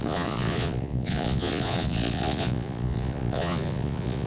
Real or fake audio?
fake